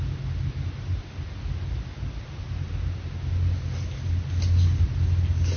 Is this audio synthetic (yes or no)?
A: no